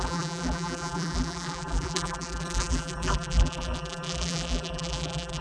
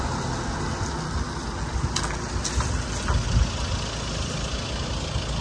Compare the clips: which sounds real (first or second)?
second